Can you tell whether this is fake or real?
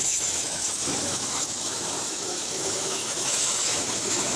fake